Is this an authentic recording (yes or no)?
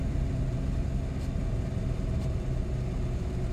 yes